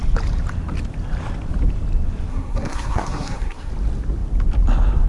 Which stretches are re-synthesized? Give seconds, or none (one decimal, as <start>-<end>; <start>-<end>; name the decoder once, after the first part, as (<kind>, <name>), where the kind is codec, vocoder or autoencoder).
2.3-3.7 (codec, SNAC)